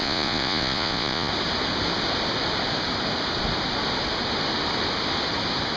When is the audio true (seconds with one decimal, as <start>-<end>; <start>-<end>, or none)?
1.3-5.8